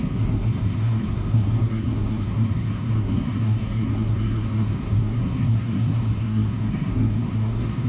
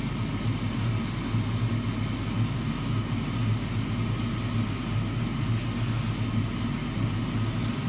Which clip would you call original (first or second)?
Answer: second